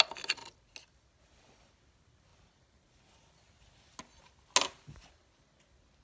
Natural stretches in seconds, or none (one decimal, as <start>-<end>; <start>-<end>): 0.0-6.0